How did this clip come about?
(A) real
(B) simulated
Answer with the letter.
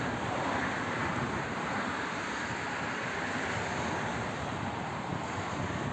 B